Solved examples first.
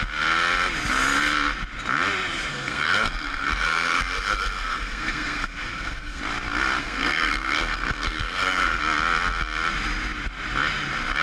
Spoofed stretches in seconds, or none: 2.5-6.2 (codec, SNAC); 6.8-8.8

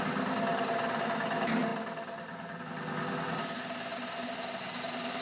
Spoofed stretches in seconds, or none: none

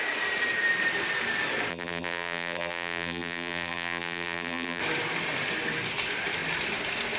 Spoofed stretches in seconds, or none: 1.7-4.8 (vocoder, BigVGAN v2)

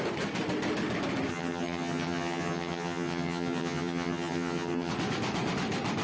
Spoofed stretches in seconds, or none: 1.3-4.9 (vocoder, HiFi-GAN)

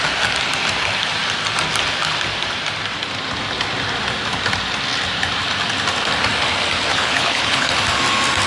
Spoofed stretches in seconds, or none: 6.9-7.7 (codec, HILCodec)

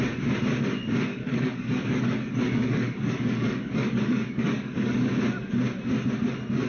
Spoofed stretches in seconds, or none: 1.1-5.1 (codec, DAC)

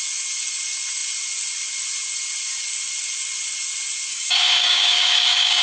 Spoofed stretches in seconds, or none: 4.1-5.6 (codec, DAC)

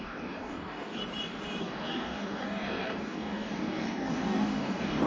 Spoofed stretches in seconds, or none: 0.0-1.0 (codec, DAC); 1.6-5.1